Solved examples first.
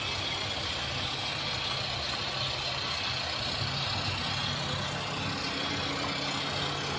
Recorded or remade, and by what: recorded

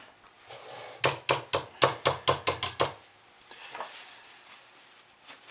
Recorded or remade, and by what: recorded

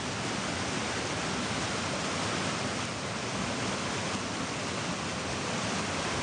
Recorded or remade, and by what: recorded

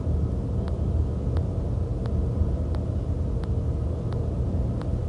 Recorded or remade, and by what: recorded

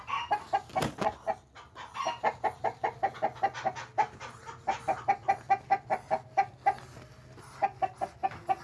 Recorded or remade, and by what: recorded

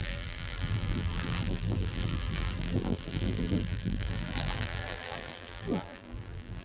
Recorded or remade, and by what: remade, vocoder, BigVGAN v2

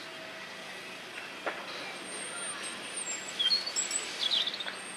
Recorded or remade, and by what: recorded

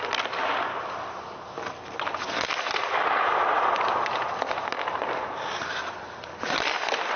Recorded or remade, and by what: recorded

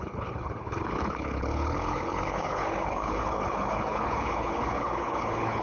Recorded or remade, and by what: remade, codec, HILCodec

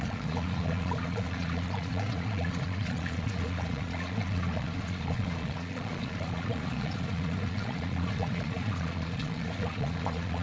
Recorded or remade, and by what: remade, vocoder, Vocos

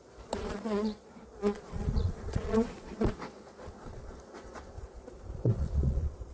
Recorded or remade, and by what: remade, vocoder, Vocos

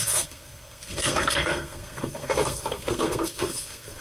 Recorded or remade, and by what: remade, codec, SNAC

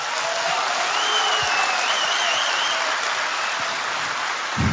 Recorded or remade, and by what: recorded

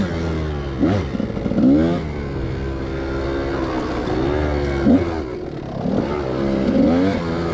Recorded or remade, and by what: recorded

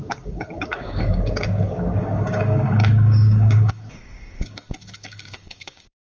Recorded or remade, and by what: remade, codec, DAC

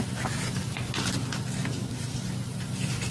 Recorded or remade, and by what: recorded